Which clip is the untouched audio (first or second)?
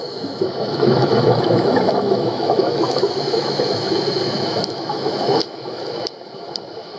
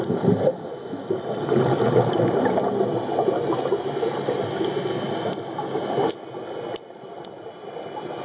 second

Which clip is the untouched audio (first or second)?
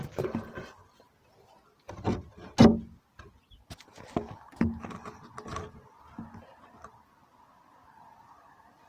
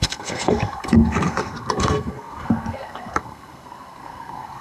first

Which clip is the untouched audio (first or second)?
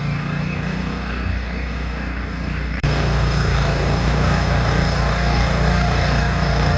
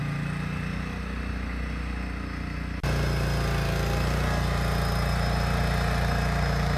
second